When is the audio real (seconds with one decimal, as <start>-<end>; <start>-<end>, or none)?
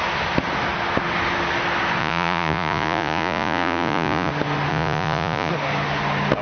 0.0-2.0; 4.3-4.7; 5.5-6.4